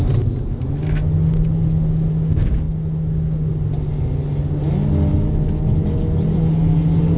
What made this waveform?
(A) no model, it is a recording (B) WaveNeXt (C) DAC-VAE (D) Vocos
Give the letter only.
A